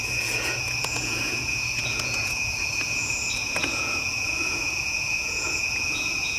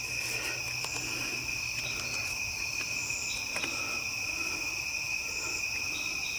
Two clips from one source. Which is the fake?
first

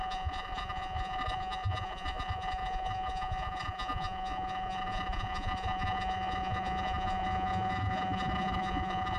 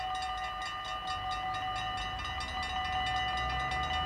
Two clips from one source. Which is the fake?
first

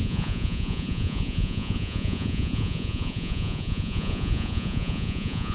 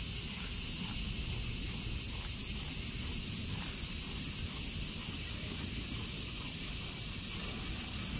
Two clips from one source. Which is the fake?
first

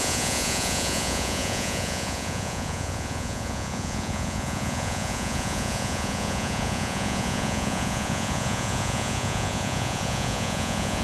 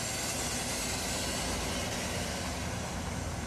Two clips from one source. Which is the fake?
first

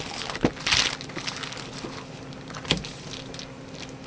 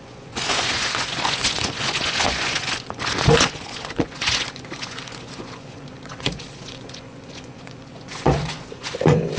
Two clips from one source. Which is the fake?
second